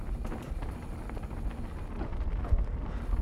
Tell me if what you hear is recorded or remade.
recorded